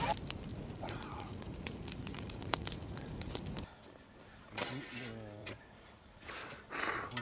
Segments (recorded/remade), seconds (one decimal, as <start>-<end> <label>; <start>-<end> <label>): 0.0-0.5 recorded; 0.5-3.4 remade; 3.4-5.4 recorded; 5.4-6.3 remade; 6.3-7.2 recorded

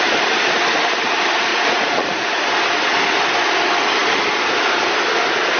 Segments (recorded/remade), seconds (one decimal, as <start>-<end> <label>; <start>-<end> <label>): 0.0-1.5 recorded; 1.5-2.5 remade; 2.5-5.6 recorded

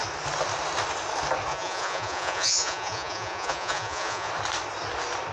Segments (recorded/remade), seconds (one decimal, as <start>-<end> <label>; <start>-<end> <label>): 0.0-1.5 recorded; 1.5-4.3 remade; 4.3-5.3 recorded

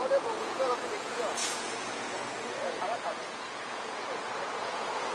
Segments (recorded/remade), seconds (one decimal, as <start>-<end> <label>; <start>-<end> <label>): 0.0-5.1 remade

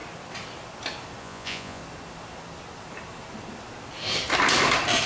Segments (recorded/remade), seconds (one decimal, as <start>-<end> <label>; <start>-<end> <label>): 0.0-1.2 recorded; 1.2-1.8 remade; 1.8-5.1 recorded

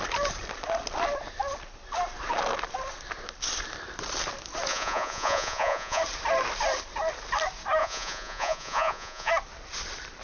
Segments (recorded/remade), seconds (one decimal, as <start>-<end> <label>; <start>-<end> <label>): 0.0-4.7 recorded; 4.7-6.0 remade; 6.0-7.8 recorded; 7.8-9.3 remade; 9.3-10.2 recorded

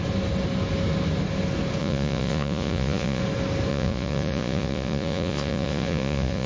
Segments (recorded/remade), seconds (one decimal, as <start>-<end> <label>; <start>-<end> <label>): 0.0-1.8 recorded; 1.8-3.2 remade; 3.2-3.7 recorded; 3.7-6.5 remade